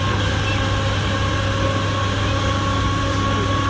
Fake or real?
real